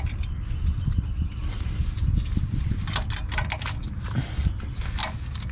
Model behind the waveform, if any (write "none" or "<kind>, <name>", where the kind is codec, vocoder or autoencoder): none